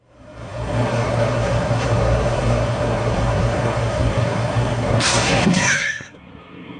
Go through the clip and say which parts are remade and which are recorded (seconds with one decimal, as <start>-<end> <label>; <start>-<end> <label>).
0.0-6.8 remade